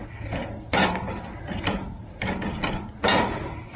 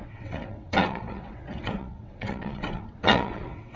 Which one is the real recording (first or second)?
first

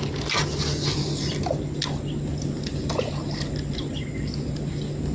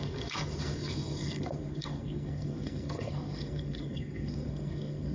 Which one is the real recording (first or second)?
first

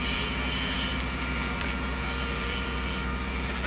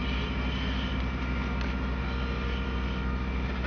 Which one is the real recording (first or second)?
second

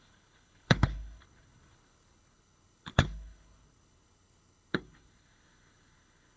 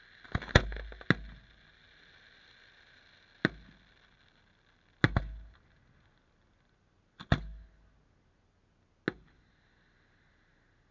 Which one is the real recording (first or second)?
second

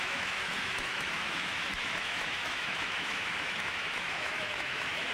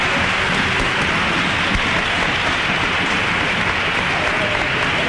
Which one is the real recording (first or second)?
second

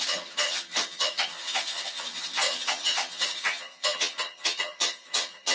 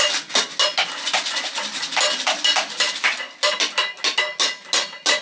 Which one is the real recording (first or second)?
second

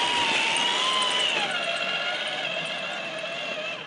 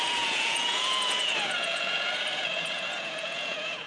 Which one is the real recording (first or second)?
first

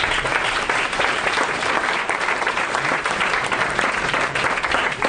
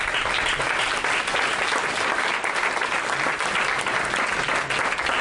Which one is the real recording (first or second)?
second